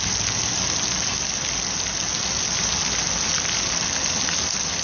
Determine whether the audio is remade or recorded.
recorded